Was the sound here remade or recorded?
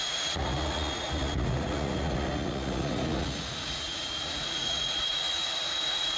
remade